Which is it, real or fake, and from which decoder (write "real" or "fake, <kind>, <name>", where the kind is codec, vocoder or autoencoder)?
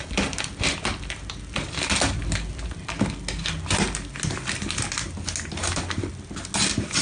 real